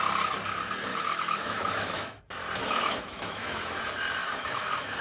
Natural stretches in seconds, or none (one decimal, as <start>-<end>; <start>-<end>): 0.0-0.9; 2.2-2.6; 3.8-4.2